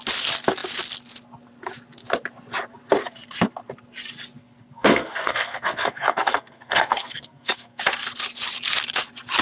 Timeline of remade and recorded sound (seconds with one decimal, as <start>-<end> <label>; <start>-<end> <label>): 0.0-4.4 recorded; 4.4-7.8 remade; 7.8-9.4 recorded